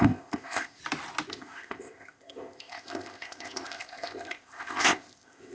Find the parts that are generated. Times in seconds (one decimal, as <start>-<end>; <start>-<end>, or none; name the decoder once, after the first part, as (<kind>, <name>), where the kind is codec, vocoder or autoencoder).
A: 0.0-0.8 (codec, ZipCodec); 1.3-5.5